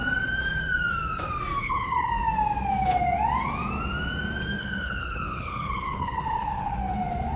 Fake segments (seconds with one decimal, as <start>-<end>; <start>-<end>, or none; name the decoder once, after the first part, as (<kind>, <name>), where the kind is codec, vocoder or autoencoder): 1.6-2.1 (codec, HILCodec); 4.6-6.8